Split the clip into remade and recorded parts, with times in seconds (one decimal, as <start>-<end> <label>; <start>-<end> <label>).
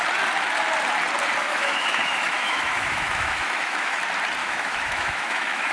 0.0-1.4 recorded; 1.4-4.0 remade; 4.0-4.4 recorded; 4.4-5.7 remade